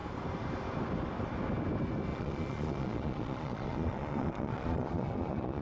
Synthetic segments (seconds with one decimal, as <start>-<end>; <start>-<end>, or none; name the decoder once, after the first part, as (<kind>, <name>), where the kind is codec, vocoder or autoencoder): 2.1-5.6 (vocoder, Vocos)

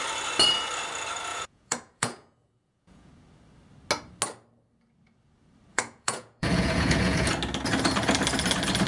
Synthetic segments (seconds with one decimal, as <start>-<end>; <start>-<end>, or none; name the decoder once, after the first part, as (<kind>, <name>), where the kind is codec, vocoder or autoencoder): 1.3-3.1 (vocoder, Vocos); 5.7-7.3

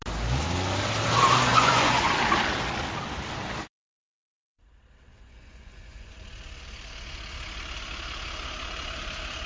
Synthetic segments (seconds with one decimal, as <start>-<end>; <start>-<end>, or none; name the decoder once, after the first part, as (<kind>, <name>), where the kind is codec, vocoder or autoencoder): 1.5-2.1 (vocoder, Vocos); 5.1-6.1

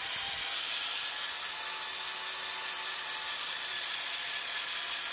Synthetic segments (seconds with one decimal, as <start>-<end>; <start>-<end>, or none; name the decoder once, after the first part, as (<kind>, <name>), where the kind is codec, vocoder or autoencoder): 3.7-4.6 (vocoder, Vocos)

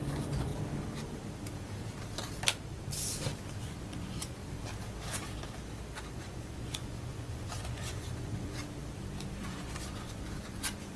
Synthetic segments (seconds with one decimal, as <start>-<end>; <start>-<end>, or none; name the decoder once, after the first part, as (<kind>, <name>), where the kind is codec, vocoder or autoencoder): 0.0-0.5 (vocoder, Vocos); 3.6-4.4; 6.1-8.6; 9.4-11.0

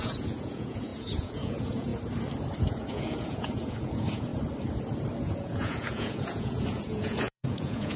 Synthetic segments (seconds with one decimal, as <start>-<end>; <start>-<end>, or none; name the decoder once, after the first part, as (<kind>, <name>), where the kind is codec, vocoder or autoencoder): 0.0-1.9 (vocoder, Vocos); 2.6-4.3; 5.2-8.0

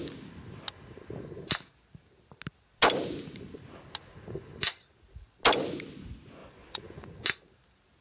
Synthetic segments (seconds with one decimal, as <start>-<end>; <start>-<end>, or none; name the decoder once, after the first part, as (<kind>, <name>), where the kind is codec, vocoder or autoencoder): 6.4-7.1 (vocoder, Vocos)

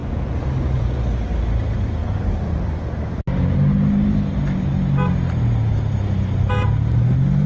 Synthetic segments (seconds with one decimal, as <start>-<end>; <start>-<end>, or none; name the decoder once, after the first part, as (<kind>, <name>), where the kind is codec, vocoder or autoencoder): 0.0-1.0 (vocoder, Vocos)